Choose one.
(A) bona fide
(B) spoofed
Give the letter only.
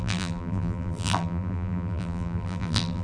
B